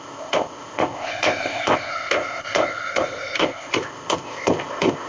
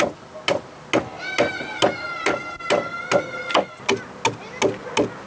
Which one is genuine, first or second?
second